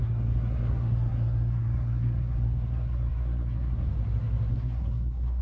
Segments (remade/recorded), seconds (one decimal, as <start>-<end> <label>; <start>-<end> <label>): 0.0-3.9 remade; 3.9-4.5 recorded; 4.5-5.4 remade